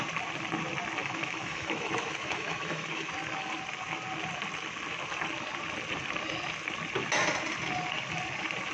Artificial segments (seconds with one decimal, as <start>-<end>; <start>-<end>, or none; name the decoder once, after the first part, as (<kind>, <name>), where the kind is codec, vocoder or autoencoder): 1.0-3.1 (autoencoder, DAC-VAE)